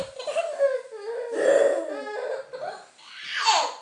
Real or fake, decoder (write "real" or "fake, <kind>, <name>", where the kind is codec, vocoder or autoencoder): real